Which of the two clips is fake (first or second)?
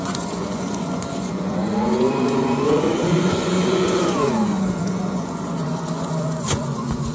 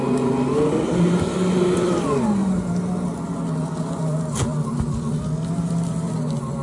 first